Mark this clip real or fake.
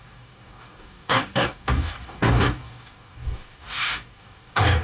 fake